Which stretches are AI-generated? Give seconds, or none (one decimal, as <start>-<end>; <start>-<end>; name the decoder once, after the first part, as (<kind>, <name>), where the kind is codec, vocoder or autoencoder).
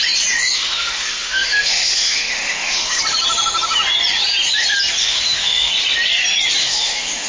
0.4-3.0 (autoencoder, DAC-VAE); 5.0-5.7; 6.6-7.3